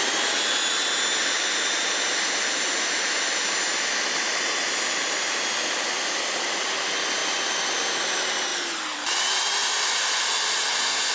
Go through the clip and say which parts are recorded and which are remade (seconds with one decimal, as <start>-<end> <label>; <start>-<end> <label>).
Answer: 0.0-8.5 recorded; 8.5-9.2 remade; 9.2-9.6 recorded; 9.6-10.2 remade; 10.2-11.1 recorded